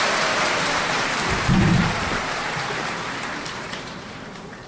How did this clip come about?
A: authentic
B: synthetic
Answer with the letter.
B